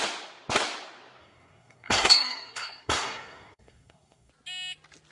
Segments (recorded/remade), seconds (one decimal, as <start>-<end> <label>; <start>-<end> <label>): 0.0-1.2 recorded; 1.2-4.3 remade; 4.3-5.1 recorded